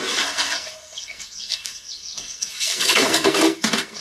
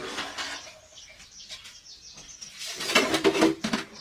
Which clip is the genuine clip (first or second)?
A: second